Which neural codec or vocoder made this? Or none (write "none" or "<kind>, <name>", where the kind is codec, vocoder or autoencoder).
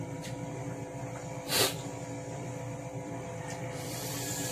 vocoder, BigVGAN v2